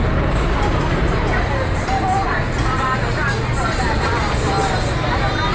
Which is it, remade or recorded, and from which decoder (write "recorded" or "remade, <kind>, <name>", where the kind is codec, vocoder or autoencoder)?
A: recorded